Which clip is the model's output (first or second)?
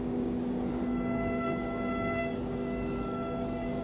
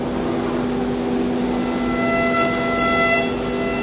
first